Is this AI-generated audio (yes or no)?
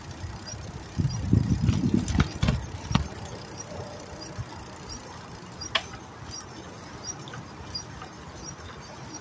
no